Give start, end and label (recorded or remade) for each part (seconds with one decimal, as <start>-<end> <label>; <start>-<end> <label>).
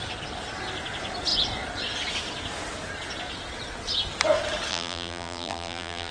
0.0-4.7 recorded; 4.7-6.1 remade